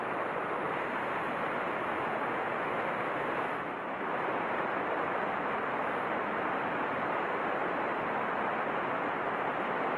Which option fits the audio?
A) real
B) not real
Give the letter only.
A